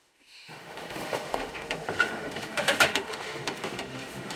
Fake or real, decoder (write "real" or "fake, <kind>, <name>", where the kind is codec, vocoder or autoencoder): fake, autoencoder, DAC-VAE